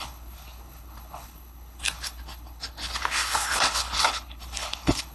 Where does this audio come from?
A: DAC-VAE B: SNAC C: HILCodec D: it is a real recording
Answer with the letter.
C